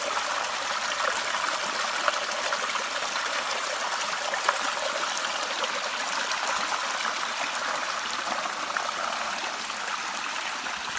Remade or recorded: recorded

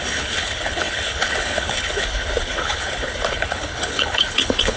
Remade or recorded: remade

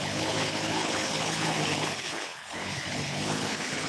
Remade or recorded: remade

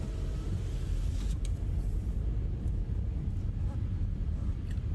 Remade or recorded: recorded